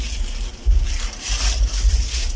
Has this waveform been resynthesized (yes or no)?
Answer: no